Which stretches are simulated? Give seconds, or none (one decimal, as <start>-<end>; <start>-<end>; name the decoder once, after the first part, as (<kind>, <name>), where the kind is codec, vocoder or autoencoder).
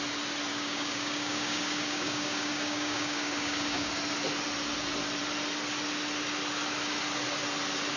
0.5-3.9 (codec, DAC)